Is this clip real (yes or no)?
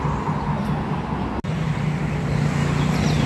yes